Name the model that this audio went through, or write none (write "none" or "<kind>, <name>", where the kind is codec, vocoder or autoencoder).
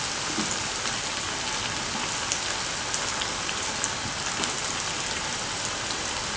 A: none